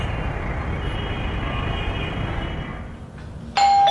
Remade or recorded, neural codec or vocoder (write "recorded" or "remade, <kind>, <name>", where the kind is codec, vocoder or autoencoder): recorded